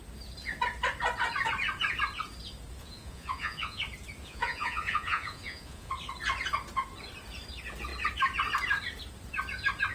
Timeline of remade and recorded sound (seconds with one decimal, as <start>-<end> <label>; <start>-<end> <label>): 0.0-2.8 recorded; 2.8-3.8 remade; 3.8-4.2 recorded; 4.2-5.9 remade; 5.9-9.9 recorded